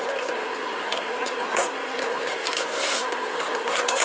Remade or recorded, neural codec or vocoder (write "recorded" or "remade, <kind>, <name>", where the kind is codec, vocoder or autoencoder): remade, codec, SNAC